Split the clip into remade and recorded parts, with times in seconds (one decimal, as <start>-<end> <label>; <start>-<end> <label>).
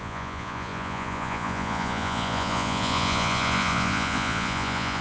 0.0-5.0 remade